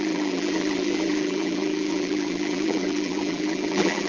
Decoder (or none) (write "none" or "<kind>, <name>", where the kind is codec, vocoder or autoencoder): vocoder, BigVGAN v2